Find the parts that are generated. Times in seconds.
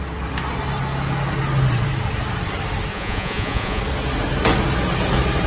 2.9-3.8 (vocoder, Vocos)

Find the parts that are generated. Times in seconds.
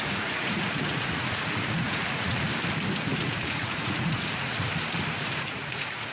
0.0-2.5 (vocoder, Vocos); 3.0-4.5; 5.2-6.1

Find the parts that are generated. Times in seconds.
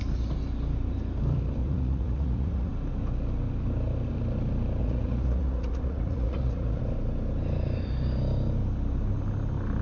1.6-2.7 (vocoder, Vocos); 4.8-6.8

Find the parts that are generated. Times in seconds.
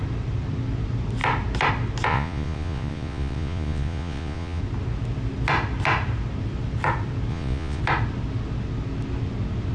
2.1-4.6 (vocoder, Vocos); 7.3-7.8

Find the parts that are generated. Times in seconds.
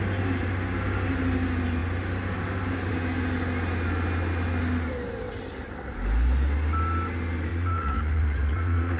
7.5-9.0 (vocoder, Vocos)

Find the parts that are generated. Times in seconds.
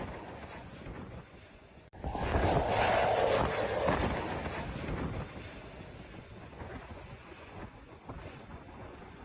0.0-2.3 (vocoder, Vocos); 6.1-9.2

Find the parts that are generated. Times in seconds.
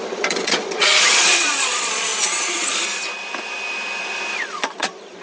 0.0-2.1 (vocoder, Vocos); 4.4-5.2